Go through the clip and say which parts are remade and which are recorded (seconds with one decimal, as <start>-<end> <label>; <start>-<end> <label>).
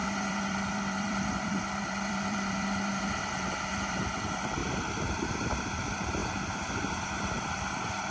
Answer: 0.0-4.6 remade; 4.6-5.1 recorded; 5.1-6.2 remade; 6.2-6.8 recorded; 6.8-8.1 remade